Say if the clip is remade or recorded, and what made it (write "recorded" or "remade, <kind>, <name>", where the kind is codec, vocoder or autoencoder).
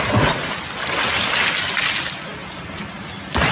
recorded